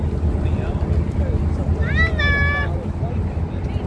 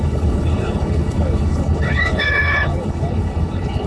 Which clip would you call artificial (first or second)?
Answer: second